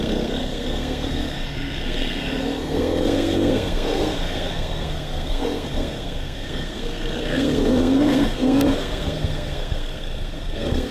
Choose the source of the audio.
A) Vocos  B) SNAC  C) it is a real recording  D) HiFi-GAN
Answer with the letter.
B